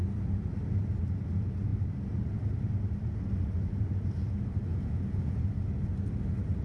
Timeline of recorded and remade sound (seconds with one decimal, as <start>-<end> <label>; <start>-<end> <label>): 0.0-4.7 recorded; 4.7-5.4 remade; 5.4-6.6 recorded